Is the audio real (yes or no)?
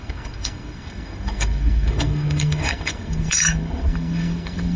no